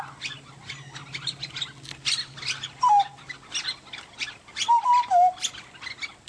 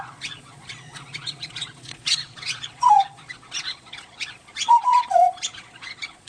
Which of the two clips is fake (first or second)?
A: second